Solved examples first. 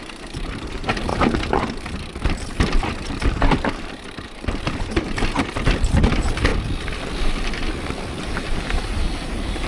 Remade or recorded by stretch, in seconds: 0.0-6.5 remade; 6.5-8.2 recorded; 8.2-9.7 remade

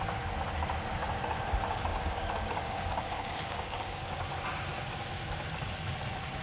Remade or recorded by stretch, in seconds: 0.0-1.9 recorded; 1.9-4.3 remade; 4.3-6.4 recorded